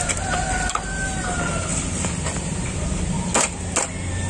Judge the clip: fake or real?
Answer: real